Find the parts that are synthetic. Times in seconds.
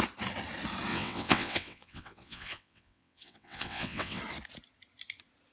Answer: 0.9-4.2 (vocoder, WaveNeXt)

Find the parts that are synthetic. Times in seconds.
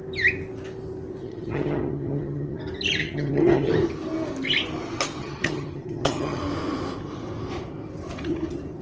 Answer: 1.2-2.6 (vocoder, HiFi-GAN); 3.0-3.7; 5.2-6.4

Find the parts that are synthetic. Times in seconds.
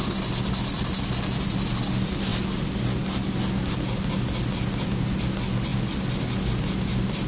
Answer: none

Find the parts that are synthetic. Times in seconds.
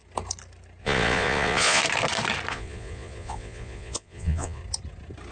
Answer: 0.8-1.8 (vocoder, Vocos); 2.5-4.6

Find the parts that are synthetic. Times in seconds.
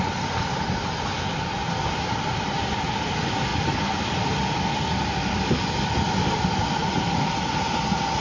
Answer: 1.6-3.1 (vocoder, BigVGAN v2)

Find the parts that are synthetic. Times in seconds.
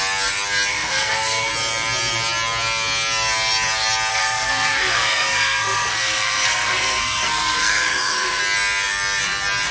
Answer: 0.7-1.5 (codec, SNAC); 4.1-8.4